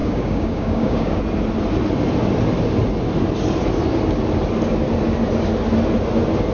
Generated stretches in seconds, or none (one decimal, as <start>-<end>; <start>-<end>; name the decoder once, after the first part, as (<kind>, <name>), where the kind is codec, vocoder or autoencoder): 0.0-1.2 (codec, DAC)